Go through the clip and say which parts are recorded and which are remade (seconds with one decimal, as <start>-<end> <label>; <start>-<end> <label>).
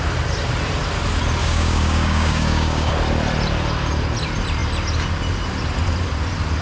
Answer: 0.0-1.4 recorded; 1.4-2.9 remade; 2.9-6.6 recorded